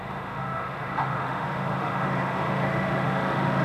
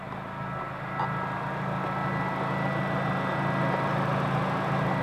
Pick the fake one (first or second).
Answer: first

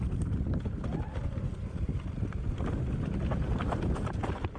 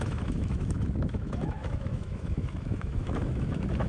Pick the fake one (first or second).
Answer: second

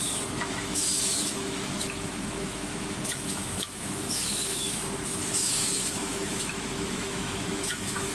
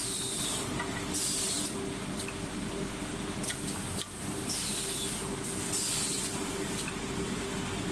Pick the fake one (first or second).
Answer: first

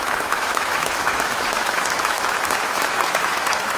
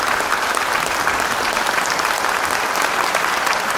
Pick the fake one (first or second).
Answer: first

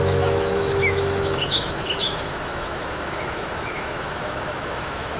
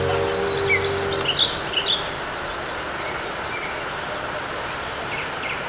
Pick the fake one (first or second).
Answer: first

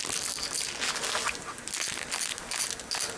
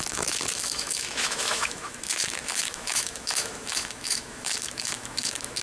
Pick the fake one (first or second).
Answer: second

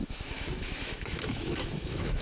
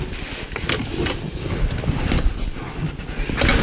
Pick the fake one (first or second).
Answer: first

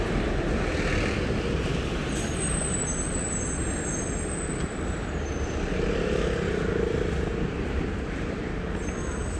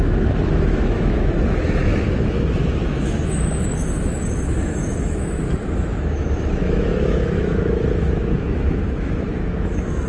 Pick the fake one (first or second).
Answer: second